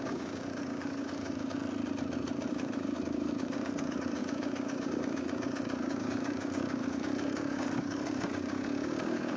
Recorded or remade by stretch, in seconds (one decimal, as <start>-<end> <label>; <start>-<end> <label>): 0.0-1.6 remade; 1.6-2.5 recorded; 2.5-9.4 remade